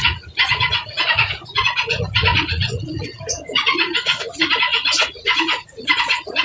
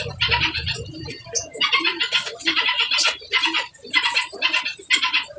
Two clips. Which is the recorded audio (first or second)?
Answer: second